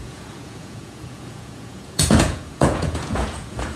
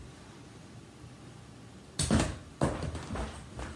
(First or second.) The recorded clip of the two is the second